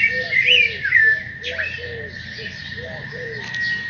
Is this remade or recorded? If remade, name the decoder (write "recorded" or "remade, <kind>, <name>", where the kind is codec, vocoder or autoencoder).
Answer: recorded